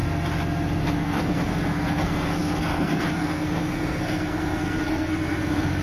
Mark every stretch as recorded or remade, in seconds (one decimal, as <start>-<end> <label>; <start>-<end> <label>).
0.0-0.8 recorded; 0.8-5.8 remade